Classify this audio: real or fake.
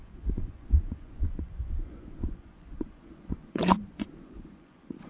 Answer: fake